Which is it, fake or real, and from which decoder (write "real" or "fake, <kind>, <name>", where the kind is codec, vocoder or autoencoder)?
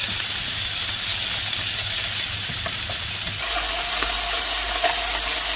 real